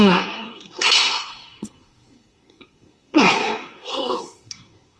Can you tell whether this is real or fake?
fake